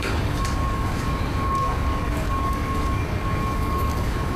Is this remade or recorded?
remade